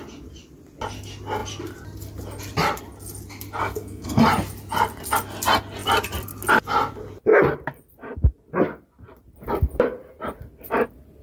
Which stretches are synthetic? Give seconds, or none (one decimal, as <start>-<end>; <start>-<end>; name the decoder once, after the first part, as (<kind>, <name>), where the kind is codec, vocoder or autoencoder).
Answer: 3.6-4.2 (codec, SNAC)